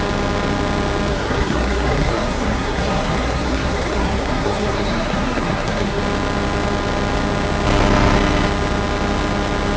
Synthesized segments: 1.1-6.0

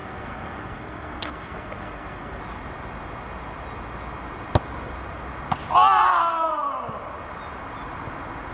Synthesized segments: 0.0-2.4; 6.2-6.7

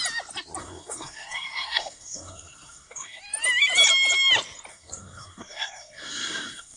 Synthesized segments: 0.6-3.2; 4.7-6.8

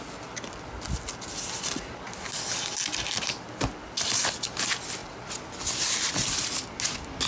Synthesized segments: none